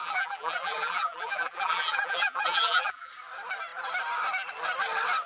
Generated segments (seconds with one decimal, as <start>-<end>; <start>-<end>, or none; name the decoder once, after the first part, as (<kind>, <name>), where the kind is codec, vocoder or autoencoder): 0.0-3.1 (vocoder, BigVGAN v2)